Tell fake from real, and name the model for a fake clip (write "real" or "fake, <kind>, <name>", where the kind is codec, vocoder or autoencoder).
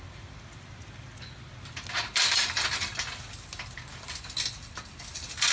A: real